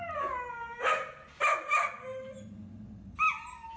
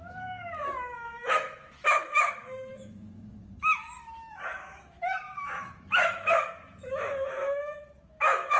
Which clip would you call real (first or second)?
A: first